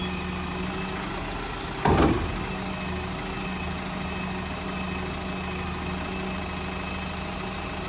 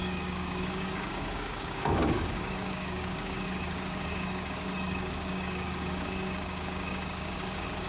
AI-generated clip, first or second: second